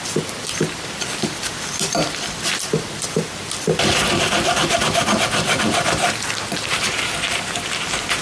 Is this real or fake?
fake